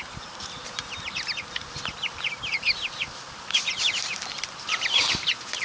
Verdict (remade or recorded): remade